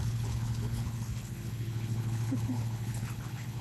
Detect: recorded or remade remade